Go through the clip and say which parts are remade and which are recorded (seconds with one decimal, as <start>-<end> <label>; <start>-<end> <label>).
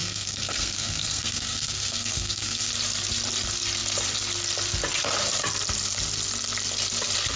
0.0-2.7 remade; 2.7-7.4 recorded